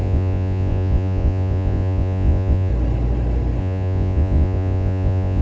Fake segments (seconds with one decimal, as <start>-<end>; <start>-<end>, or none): 0.0-2.7; 3.6-5.4